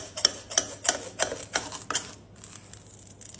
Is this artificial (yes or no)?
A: no